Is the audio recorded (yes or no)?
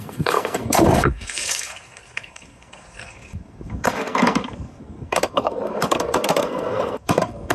no